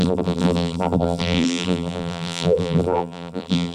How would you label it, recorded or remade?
remade